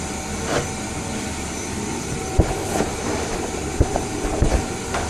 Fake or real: real